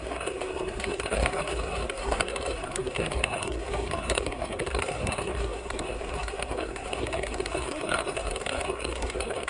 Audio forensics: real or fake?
fake